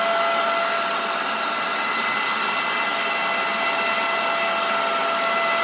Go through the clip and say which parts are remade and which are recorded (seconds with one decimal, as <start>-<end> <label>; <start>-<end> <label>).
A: 0.0-5.6 recorded